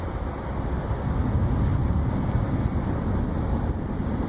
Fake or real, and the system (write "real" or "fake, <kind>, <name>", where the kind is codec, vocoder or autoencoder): real